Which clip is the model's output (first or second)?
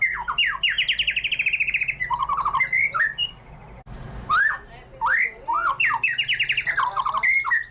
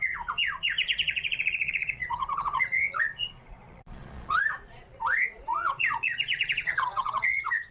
second